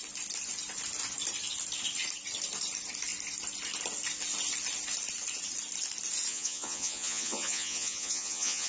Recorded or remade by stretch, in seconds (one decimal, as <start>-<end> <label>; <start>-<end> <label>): 0.0-6.3 recorded; 6.3-8.7 remade